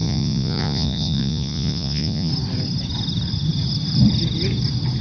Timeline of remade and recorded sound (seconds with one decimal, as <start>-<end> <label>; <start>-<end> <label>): 0.0-2.3 remade; 2.3-5.0 recorded

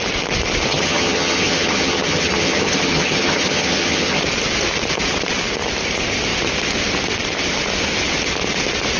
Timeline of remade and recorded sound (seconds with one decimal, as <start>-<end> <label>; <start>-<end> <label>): 0.0-0.7 recorded; 0.7-4.2 remade; 4.2-9.0 recorded

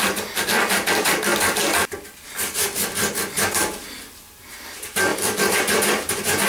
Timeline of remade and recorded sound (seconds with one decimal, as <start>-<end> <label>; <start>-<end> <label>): 0.0-5.1 recorded; 5.1-5.6 remade; 5.6-6.5 recorded

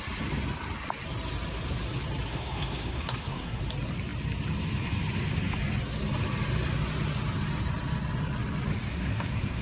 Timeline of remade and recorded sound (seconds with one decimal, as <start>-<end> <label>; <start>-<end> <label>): 0.0-2.3 recorded; 2.3-3.6 remade; 3.6-8.9 recorded; 8.9-9.6 remade

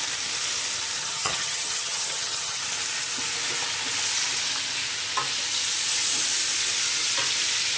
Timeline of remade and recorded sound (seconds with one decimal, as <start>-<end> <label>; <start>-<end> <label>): 0.0-1.0 recorded; 1.0-2.6 remade; 2.6-7.8 recorded

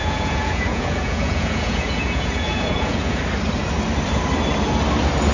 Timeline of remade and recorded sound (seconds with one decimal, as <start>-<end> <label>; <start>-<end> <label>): 0.0-3.2 remade; 3.2-5.3 recorded

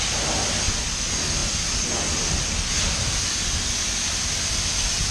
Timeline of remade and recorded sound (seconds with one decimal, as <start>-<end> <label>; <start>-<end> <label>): 0.0-5.1 recorded